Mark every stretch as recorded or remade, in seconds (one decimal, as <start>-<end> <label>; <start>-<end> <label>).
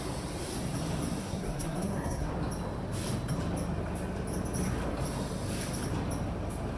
0.0-1.2 recorded; 1.2-2.3 remade; 2.3-6.8 recorded